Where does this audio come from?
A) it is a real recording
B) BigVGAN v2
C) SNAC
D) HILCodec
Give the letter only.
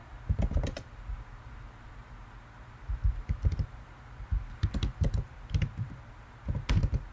A